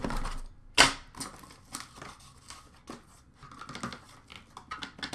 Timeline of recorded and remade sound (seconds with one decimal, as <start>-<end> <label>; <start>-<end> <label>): 0.0-5.1 recorded